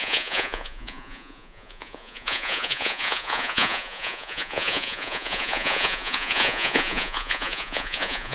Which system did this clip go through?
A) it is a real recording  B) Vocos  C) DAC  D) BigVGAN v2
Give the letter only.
B